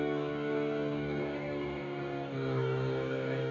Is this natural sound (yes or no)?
no